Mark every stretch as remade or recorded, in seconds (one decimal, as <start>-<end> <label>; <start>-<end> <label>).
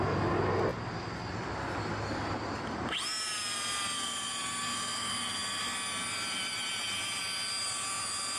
0.0-8.4 recorded